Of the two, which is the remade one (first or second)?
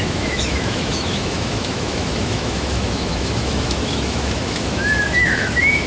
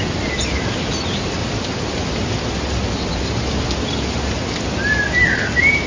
first